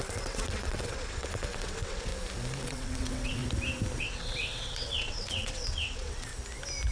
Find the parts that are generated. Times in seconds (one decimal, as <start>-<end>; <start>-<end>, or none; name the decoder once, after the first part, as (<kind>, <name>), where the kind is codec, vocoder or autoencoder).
0.0-2.1 (vocoder, WaveNeXt); 2.6-3.4; 4.0-6.3